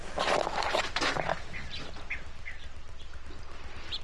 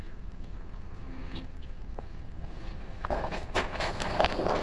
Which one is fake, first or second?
second